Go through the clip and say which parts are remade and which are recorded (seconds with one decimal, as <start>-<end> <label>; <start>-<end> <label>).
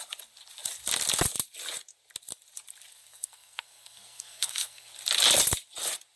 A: 0.0-2.9 recorded; 2.9-4.9 remade; 4.9-6.2 recorded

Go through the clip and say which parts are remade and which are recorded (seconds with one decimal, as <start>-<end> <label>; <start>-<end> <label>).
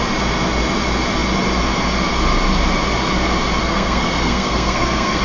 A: 0.0-3.6 recorded; 3.6-5.2 remade